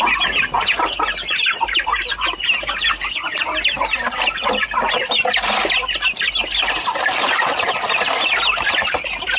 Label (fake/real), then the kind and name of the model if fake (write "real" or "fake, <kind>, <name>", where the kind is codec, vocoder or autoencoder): real